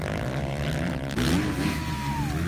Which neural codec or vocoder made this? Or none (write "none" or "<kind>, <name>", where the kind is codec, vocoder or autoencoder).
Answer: none